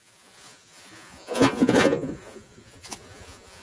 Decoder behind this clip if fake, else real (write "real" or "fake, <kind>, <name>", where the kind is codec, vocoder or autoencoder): fake, vocoder, Vocos